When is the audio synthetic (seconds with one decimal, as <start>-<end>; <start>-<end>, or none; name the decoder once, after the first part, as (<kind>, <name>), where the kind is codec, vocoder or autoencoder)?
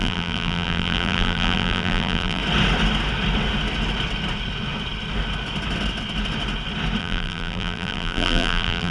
0.0-2.4 (vocoder, BigVGAN v2); 7.0-8.9